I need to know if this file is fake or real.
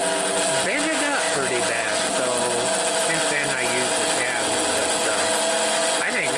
real